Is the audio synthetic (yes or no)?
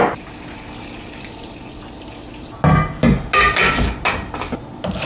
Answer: no